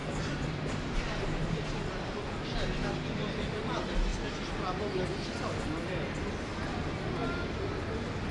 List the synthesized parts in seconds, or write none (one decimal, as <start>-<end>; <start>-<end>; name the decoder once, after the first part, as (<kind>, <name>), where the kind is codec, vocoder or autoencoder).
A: 0.0-1.6 (vocoder, BigVGAN v2)